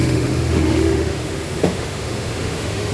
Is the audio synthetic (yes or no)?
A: yes